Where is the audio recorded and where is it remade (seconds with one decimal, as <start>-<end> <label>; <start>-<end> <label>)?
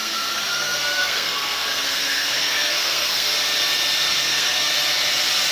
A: 0.0-3.3 remade; 3.3-4.1 recorded; 4.1-4.7 remade; 4.7-5.5 recorded